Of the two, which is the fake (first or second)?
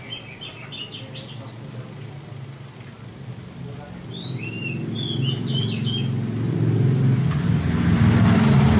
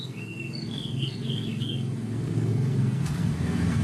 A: second